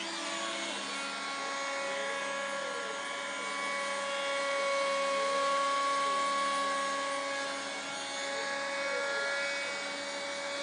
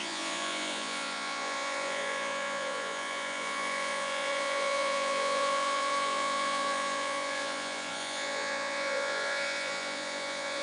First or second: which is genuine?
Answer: first